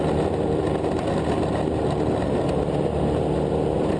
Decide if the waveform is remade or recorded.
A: recorded